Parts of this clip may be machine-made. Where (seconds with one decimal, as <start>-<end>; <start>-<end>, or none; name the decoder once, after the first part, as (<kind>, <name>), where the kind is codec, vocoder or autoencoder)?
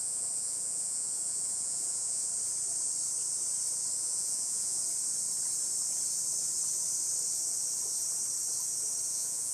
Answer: 0.0-2.3 (vocoder, Vocos); 4.0-4.8; 9.1-9.5